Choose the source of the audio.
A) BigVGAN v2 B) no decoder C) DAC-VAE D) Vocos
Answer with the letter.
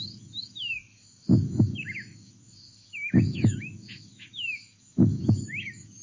C